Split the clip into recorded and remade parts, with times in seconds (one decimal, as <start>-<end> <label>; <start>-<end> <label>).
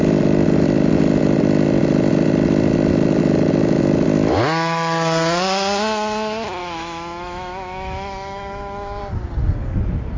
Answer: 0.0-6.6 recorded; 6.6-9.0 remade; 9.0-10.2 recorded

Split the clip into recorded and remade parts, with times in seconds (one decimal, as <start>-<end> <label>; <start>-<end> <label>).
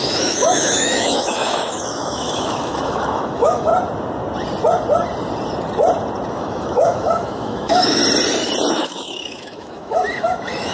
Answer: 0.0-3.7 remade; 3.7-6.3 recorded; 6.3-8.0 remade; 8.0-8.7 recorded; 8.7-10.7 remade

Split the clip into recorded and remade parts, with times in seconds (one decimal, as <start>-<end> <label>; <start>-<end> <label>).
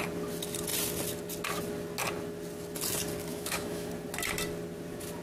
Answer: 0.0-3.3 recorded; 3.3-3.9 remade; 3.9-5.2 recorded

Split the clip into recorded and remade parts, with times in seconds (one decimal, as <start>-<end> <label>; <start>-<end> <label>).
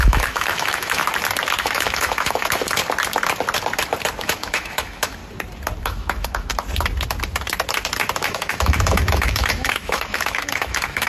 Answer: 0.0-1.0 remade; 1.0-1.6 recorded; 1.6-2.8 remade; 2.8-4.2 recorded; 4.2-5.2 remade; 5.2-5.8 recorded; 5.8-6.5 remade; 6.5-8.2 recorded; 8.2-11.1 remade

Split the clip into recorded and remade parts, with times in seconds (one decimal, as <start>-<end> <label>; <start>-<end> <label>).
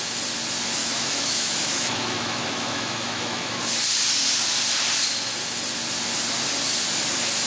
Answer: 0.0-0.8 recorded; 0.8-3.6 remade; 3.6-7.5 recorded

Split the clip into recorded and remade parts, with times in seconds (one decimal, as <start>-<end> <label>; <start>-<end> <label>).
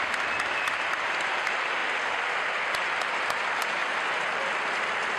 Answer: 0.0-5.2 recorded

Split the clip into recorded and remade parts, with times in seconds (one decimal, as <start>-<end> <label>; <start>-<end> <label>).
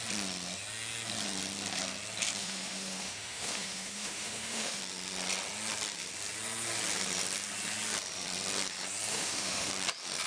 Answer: 0.0-2.4 recorded; 2.4-4.8 remade; 4.8-9.1 recorded; 9.1-9.7 remade; 9.7-10.3 recorded